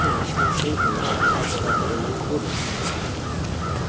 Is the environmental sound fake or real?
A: real